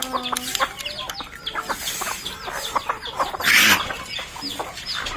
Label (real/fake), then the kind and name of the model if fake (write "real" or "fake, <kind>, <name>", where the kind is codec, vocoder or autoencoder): real